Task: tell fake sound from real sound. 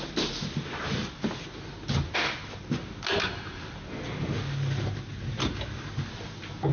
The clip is real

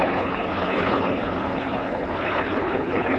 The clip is fake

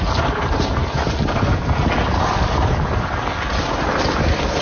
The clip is real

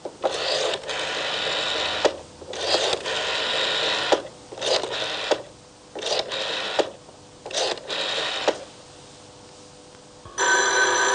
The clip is real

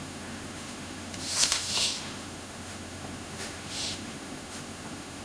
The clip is fake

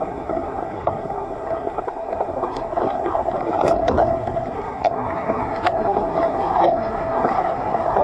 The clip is fake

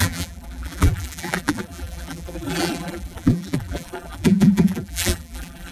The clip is fake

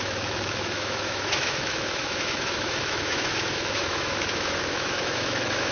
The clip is fake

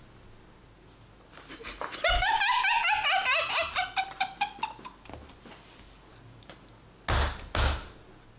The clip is real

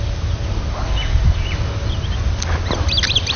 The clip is real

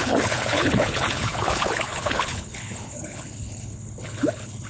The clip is fake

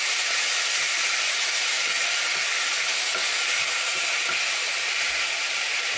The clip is real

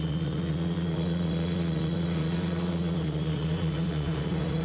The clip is fake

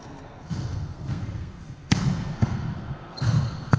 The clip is fake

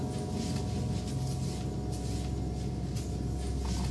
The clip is real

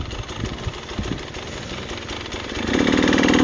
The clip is fake